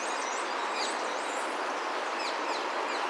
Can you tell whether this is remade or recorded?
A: recorded